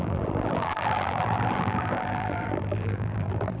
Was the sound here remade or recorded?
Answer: remade